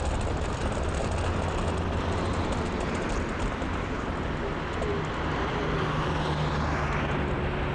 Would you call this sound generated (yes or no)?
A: no